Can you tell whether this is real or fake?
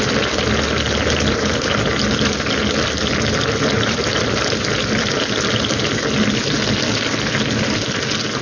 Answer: real